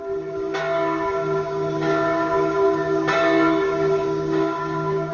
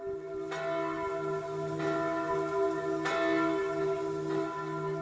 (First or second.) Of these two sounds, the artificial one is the first